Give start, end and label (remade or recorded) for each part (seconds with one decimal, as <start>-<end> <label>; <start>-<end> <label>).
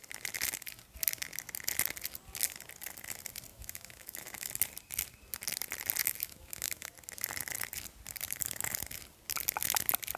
0.0-3.5 recorded; 3.5-4.5 remade; 4.5-6.0 recorded; 6.0-6.9 remade; 6.9-10.2 recorded